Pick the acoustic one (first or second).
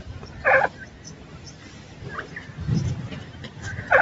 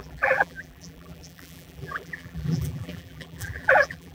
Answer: first